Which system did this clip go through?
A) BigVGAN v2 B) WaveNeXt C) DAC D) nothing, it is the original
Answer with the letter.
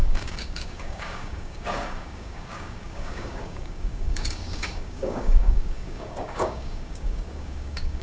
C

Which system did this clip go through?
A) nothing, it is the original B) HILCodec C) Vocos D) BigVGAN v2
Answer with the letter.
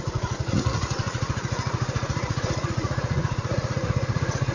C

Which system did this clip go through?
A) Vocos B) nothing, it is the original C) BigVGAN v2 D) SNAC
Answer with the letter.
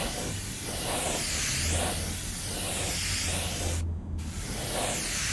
B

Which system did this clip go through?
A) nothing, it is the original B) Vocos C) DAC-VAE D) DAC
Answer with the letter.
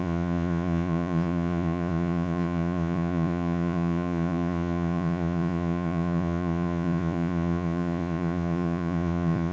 B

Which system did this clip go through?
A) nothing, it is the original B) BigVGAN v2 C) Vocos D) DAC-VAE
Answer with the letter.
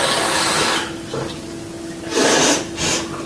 A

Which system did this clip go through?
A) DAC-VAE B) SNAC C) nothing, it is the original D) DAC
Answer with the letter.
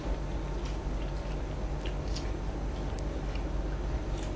C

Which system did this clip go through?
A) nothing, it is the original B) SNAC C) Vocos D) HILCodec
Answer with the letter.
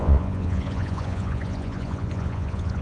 C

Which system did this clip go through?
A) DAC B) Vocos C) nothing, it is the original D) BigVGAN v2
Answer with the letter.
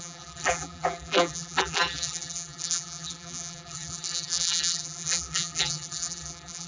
D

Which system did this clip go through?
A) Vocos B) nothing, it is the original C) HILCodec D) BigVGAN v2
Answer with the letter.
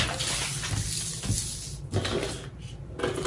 B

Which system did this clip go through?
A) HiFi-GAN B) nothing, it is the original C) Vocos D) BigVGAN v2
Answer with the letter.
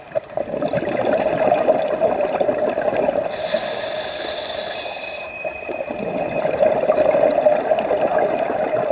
B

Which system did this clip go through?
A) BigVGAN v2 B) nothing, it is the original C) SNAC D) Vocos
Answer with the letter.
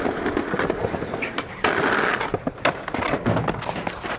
B